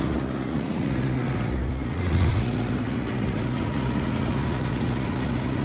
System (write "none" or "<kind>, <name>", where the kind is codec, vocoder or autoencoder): vocoder, Vocos